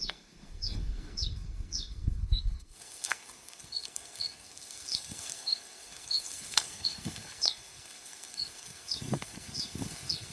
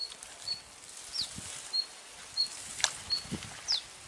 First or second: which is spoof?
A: first